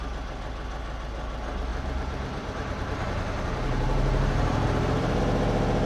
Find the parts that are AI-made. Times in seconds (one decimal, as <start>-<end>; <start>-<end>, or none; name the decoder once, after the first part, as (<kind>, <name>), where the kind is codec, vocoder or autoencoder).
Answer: 1.7-5.2 (vocoder, BigVGAN v2)